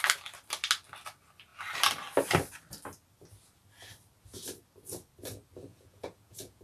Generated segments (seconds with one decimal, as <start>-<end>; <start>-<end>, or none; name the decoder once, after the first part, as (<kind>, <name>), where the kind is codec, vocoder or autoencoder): 5.7-6.6 (vocoder, Vocos)